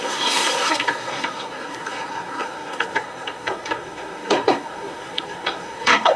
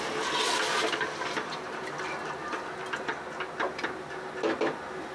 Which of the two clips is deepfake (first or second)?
first